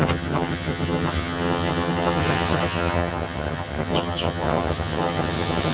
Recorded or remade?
remade